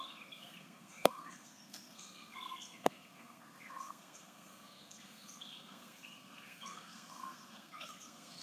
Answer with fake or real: fake